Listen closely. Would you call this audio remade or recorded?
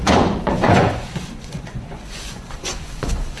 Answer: remade